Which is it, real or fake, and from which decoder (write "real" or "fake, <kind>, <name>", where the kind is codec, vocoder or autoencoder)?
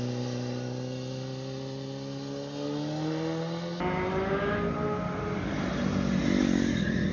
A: real